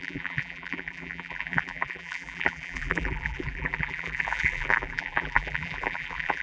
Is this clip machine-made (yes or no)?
yes